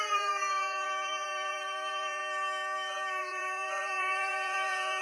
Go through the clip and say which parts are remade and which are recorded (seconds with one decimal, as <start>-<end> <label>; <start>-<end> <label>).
0.0-2.2 remade; 2.2-3.2 recorded; 3.2-5.0 remade